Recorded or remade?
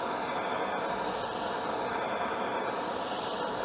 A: recorded